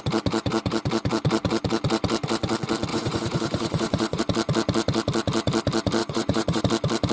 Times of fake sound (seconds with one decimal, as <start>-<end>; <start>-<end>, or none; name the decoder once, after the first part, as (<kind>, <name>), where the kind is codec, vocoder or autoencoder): 2.9-4.2 (vocoder, Vocos); 6.0-6.6